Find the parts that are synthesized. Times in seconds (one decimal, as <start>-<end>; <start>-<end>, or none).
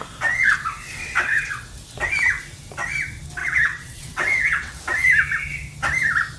1.0-1.5; 3.4-4.8